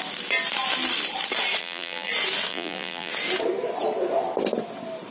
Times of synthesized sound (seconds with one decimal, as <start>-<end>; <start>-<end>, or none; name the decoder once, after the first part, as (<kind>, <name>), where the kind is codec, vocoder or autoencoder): 1.6-2.1 (vocoder, BigVGAN v2); 2.5-3.1